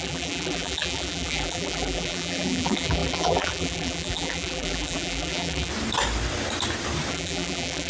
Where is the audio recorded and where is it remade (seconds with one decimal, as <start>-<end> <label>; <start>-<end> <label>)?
0.0-5.7 remade; 5.7-7.1 recorded; 7.1-7.9 remade

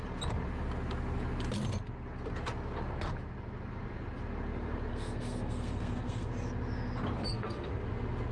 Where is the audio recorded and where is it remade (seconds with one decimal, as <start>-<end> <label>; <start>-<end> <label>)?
0.0-4.9 recorded; 4.9-6.3 remade; 6.3-7.2 recorded; 7.2-7.7 remade; 7.7-8.3 recorded

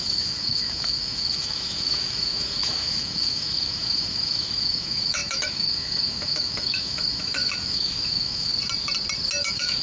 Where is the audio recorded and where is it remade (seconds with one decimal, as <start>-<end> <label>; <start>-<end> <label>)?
0.0-8.5 remade; 8.5-9.4 recorded; 9.4-9.8 remade

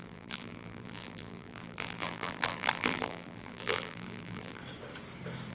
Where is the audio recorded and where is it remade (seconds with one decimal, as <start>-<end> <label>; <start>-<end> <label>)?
0.0-4.6 remade; 4.6-5.5 recorded

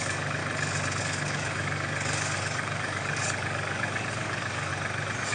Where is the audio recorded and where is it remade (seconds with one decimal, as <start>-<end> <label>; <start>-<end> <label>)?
0.0-0.4 remade; 0.4-1.0 recorded; 1.0-4.7 remade; 4.7-5.3 recorded